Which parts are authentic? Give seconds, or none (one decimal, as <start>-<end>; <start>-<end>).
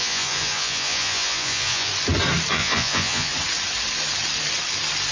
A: 1.9-2.5; 3.3-5.1